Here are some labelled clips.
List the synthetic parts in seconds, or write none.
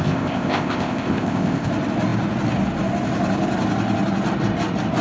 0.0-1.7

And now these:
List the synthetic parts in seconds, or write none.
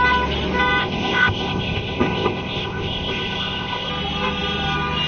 0.8-3.9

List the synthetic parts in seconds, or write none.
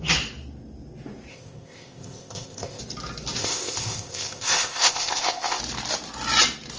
1.3-2.8; 3.4-5.6